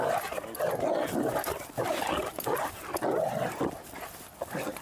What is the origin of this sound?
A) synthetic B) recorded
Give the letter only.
B